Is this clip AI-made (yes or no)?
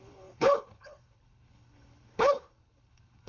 yes